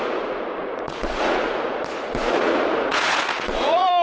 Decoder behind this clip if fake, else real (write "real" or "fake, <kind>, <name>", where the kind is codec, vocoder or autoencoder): fake, vocoder, Vocos